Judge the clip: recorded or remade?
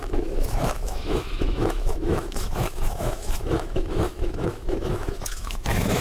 remade